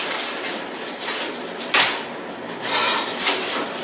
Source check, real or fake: real